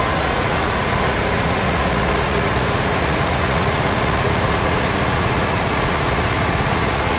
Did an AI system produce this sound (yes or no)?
yes